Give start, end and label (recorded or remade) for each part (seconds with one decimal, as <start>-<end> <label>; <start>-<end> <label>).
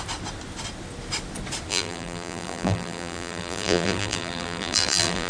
0.0-1.7 recorded; 1.7-5.3 remade